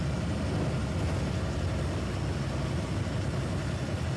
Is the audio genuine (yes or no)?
yes